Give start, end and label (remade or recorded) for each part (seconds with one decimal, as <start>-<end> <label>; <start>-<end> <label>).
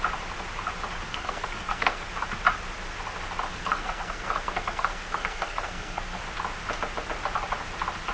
0.0-1.1 recorded; 1.1-2.1 remade; 2.1-3.5 recorded; 3.5-6.2 remade; 6.2-8.1 recorded